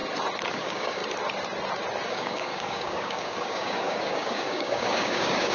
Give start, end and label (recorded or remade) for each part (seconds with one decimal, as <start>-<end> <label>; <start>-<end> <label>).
0.0-0.5 recorded; 0.5-1.0 remade; 1.0-2.1 recorded; 2.1-5.5 remade